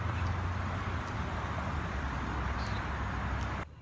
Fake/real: real